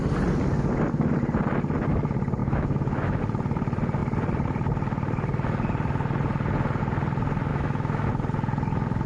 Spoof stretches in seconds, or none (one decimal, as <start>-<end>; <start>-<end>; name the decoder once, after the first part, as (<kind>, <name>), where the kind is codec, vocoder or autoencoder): 2.4-3.2 (autoencoder, DAC-VAE); 7.5-8.1